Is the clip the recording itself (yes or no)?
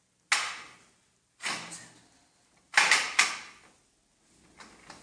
yes